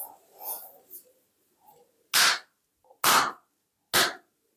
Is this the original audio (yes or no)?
yes